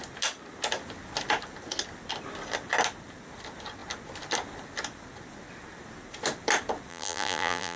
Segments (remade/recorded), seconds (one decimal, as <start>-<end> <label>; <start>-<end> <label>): 0.0-6.9 recorded; 6.9-7.8 remade